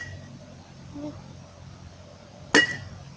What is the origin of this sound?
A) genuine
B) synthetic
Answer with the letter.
A